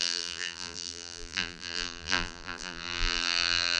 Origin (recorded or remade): remade